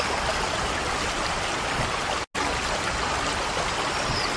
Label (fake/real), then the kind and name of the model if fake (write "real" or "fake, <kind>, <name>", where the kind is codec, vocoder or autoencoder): real